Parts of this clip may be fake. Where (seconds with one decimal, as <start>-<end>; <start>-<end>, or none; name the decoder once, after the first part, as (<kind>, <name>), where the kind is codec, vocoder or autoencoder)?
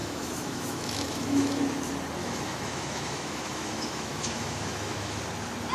0.0-1.6 (autoencoder, DAC-VAE); 2.2-5.2